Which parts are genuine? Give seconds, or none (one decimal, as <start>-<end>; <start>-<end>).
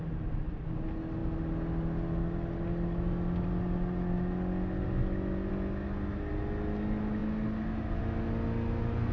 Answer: 0.0-9.1